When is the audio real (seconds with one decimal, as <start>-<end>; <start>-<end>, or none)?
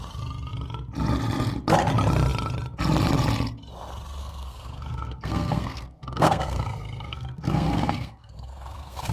0.0-4.2